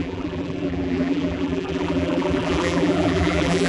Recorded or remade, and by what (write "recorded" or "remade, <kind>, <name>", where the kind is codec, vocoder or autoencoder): remade, vocoder, BigVGAN v2